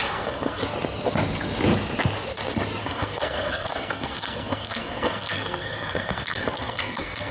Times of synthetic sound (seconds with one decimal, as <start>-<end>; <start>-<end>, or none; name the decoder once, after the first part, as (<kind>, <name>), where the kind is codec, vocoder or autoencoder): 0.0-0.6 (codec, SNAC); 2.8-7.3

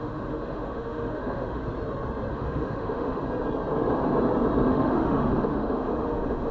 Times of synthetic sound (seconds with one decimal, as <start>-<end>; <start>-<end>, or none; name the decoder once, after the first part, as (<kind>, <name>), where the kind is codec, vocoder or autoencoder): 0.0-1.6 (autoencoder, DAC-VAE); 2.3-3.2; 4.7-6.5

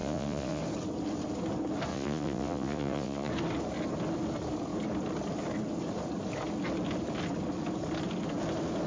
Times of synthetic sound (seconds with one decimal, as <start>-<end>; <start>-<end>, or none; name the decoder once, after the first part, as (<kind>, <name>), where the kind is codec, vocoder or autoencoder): 0.0-0.6 (vocoder, Vocos); 1.9-3.3

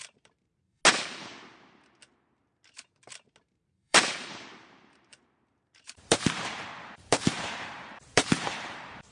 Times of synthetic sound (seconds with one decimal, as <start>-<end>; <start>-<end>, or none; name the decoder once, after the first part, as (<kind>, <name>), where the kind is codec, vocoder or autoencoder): 0.0-0.8 (vocoder, BigVGAN v2); 3.4-9.1